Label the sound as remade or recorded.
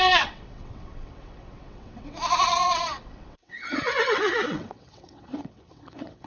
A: remade